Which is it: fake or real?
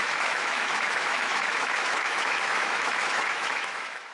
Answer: fake